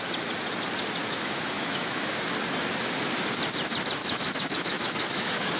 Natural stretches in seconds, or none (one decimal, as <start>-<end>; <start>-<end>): 0.0-1.0; 2.1-4.0